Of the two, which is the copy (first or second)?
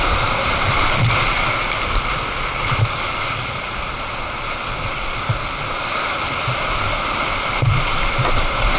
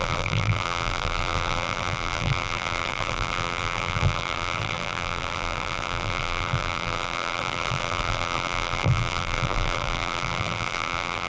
second